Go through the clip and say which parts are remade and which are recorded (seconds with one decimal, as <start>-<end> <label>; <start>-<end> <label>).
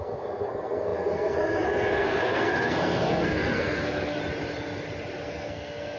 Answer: 0.0-4.2 remade; 4.2-5.2 recorded; 5.2-6.0 remade